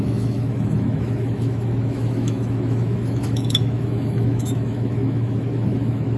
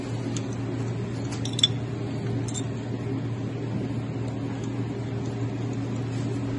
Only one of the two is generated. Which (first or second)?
first